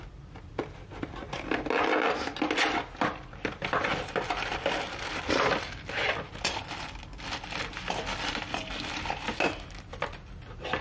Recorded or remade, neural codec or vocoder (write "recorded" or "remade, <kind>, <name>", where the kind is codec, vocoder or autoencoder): recorded